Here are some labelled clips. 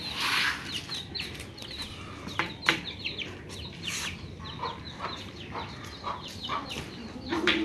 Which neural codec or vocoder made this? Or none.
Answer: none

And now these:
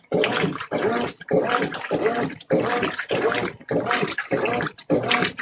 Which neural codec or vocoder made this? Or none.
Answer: none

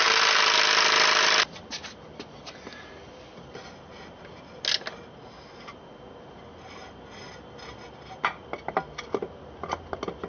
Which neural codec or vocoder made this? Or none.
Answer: none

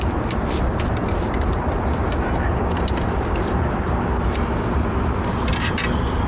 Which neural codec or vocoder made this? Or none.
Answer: vocoder, BigVGAN v2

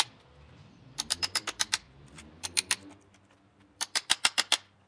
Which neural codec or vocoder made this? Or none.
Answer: vocoder, BigVGAN v2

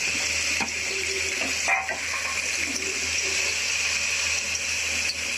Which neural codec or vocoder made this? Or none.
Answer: none